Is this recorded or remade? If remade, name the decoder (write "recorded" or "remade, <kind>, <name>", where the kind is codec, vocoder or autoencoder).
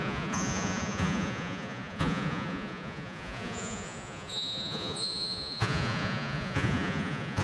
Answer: remade, vocoder, Vocos